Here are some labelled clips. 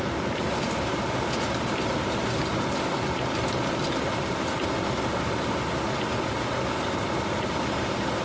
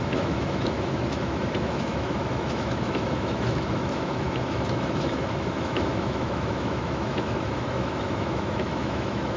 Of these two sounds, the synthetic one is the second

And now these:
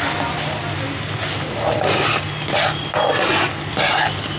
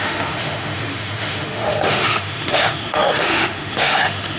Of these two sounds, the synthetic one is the second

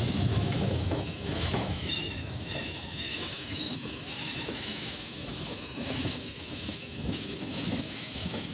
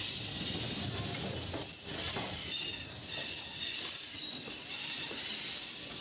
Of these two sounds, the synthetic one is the first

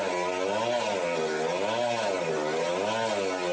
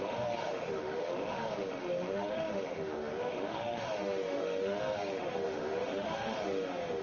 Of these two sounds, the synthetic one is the second